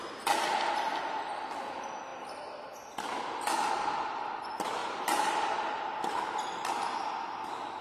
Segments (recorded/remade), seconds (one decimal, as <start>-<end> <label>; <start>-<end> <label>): 0.0-4.8 recorded; 4.8-5.8 remade; 5.8-7.8 recorded